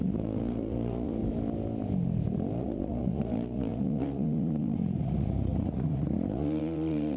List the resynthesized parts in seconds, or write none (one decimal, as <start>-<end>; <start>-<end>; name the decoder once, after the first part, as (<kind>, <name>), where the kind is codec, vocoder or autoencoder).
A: 0.0-1.2 (vocoder, Vocos); 2.6-7.2